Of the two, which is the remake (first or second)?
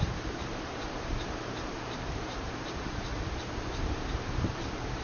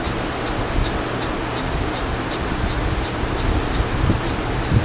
first